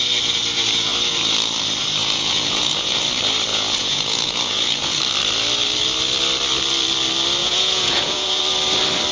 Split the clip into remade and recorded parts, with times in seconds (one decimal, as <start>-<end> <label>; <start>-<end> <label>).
0.0-2.0 recorded; 2.0-3.0 remade; 3.0-3.5 recorded; 3.5-5.0 remade; 5.0-7.4 recorded; 7.4-8.4 remade; 8.4-9.1 recorded